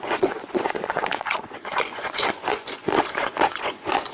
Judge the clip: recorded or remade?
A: remade